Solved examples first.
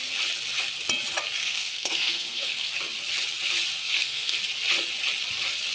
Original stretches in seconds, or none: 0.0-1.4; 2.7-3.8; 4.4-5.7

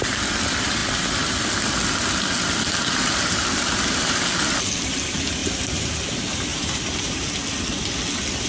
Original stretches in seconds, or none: 0.0-5.4; 5.9-6.5; 7.3-8.5